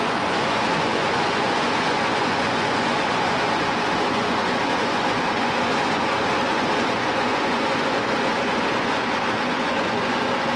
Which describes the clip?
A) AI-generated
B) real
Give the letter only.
A